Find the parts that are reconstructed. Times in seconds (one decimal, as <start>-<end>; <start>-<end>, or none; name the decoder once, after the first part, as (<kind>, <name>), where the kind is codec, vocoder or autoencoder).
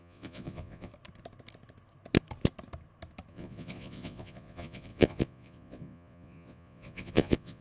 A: 0.0-0.9 (vocoder, Vocos); 3.3-7.6